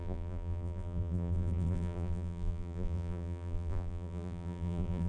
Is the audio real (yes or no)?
no